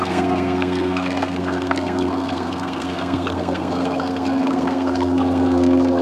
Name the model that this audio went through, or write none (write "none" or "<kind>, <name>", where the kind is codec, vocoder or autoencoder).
codec, SNAC